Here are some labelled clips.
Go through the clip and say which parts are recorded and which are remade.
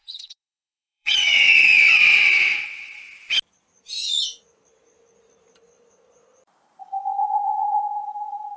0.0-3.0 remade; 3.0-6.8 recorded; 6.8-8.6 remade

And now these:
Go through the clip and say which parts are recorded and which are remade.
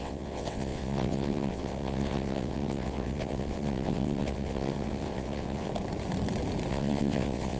0.0-5.7 remade; 5.7-6.7 recorded; 6.7-7.6 remade